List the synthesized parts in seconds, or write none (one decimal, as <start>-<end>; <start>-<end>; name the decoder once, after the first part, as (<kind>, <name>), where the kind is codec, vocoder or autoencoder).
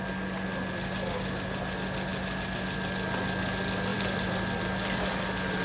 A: 3.9-5.6 (vocoder, BigVGAN v2)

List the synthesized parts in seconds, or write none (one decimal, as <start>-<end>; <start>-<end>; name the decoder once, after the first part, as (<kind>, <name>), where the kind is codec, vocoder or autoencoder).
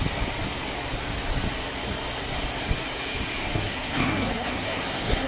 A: 3.4-5.3 (codec, SNAC)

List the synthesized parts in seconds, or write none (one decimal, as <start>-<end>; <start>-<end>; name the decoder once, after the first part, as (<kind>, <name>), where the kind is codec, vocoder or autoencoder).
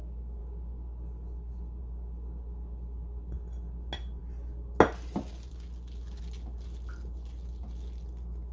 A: none